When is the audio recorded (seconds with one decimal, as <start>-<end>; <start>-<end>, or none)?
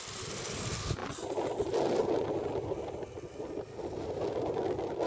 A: 0.0-5.1